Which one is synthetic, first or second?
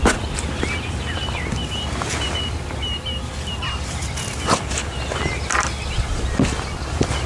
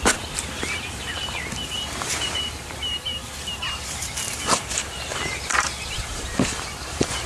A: second